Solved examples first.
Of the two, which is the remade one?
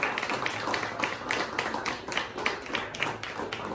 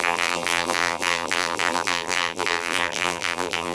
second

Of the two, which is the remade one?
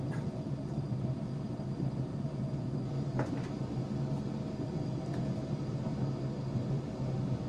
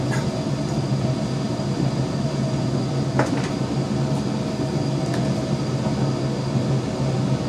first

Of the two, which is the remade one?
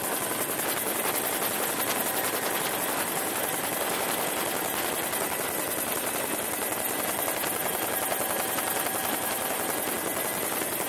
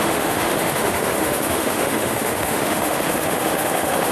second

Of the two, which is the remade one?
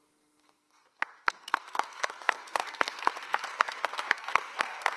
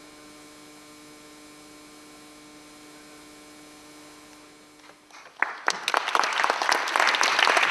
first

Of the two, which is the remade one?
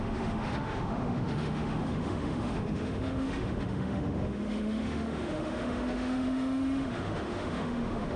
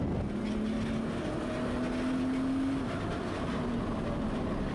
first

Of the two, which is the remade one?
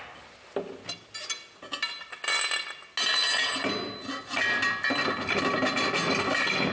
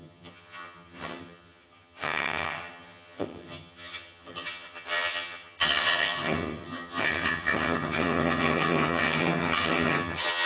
second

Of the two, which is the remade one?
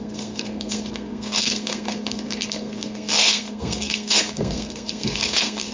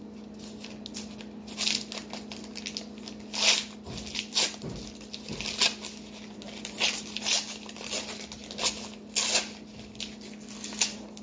first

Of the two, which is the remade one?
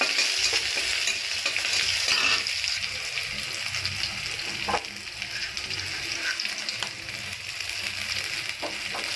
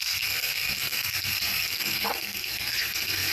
second